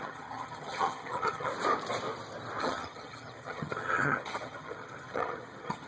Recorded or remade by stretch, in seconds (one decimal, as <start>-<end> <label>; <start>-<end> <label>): 0.0-1.5 remade; 1.5-2.6 recorded; 2.6-5.9 remade